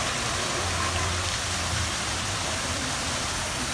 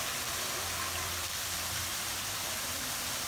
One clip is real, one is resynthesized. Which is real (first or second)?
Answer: second